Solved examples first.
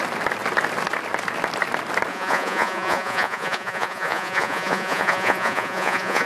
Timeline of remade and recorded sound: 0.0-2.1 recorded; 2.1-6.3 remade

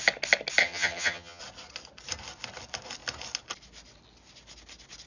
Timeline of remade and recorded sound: 0.0-0.6 recorded; 0.6-1.4 remade; 1.4-5.1 recorded

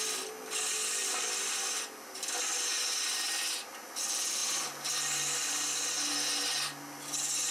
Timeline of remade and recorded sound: 0.0-1.0 recorded; 1.0-2.3 remade; 2.3-7.5 recorded

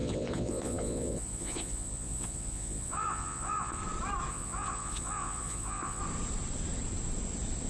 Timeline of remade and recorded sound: 0.0-3.8 remade; 3.8-4.3 recorded; 4.3-6.0 remade; 6.0-7.7 recorded

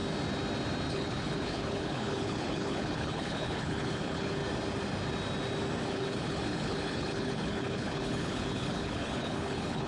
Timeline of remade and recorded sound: 0.0-0.9 recorded; 0.9-4.4 remade; 4.4-5.9 recorded; 5.9-9.9 remade

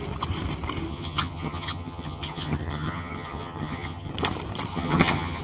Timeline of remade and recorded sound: 0.0-0.9 recorded; 0.9-4.1 remade; 4.1-4.7 recorded; 4.7-5.4 remade

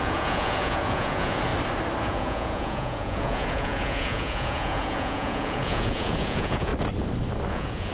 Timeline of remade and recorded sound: 0.0-1.5 remade; 1.5-2.0 recorded; 2.0-6.7 remade; 6.7-7.5 recorded; 7.5-7.9 remade

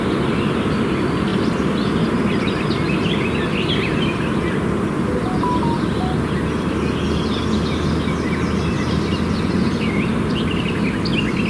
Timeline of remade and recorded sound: 0.0-11.5 recorded